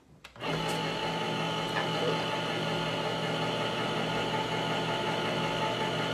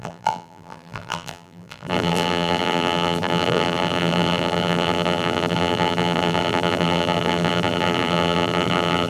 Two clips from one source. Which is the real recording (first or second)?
first